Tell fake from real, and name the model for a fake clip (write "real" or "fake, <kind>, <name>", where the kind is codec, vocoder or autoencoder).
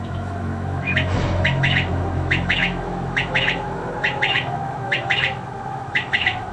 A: fake, autoencoder, DAC-VAE